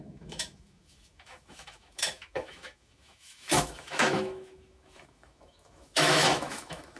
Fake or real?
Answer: fake